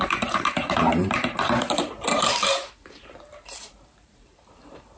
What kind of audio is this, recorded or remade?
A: remade